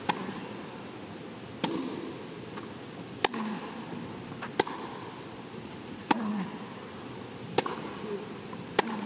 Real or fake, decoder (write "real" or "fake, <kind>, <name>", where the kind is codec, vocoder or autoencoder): real